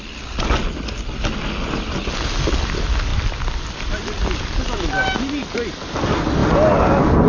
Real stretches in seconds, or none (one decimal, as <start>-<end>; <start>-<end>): 0.0-7.3